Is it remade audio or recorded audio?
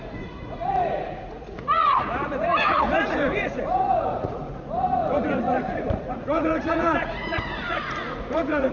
remade